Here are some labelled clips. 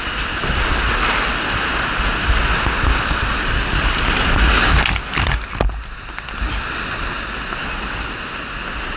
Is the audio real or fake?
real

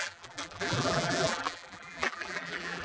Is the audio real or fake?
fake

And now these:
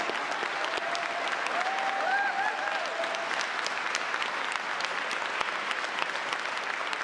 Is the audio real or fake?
real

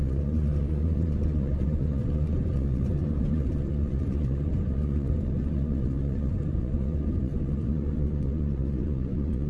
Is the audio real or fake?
fake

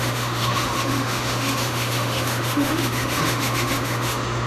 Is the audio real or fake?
fake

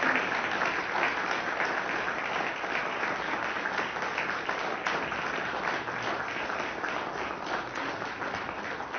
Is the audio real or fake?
real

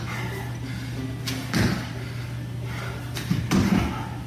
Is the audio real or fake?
real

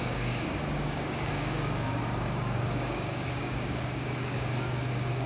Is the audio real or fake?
fake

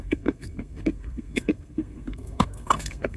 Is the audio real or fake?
fake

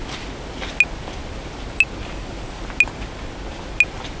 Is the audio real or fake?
real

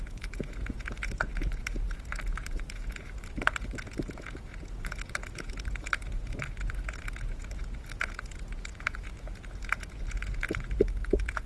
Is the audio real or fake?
fake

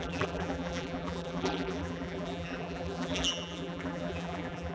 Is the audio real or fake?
fake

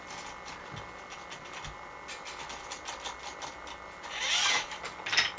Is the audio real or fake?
real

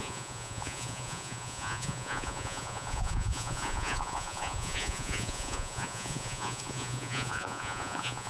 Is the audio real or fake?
fake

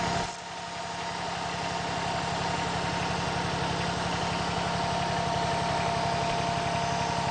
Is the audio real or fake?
real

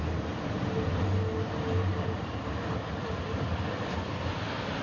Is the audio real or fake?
real